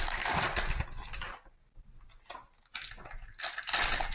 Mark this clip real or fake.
real